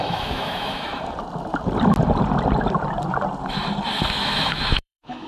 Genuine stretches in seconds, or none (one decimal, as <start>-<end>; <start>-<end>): 0.9-4.1